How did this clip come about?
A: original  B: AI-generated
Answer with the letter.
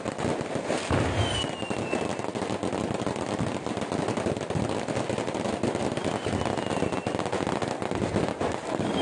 A